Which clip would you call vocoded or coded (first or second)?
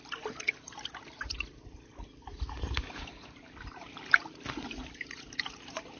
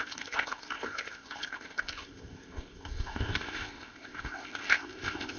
second